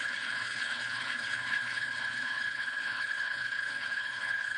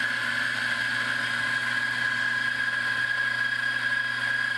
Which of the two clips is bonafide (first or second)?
second